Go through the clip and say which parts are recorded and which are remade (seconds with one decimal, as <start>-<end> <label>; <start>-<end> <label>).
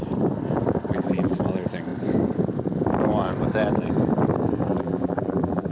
0.0-0.9 recorded; 0.9-1.4 remade; 1.4-4.7 recorded; 4.7-5.7 remade